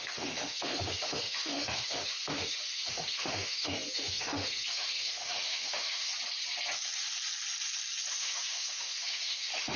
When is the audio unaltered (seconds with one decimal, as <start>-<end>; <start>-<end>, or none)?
6.1-8.1

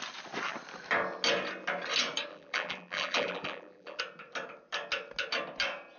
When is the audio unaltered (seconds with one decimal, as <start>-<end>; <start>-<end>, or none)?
0.0-2.3; 4.0-6.0